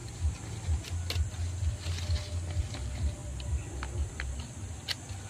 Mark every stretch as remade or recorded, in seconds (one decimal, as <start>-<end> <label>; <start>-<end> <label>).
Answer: 0.0-5.3 recorded